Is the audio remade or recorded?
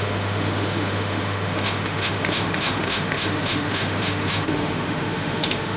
remade